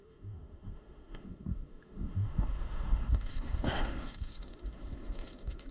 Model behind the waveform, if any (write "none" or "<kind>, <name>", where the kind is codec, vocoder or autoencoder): autoencoder, DAC-VAE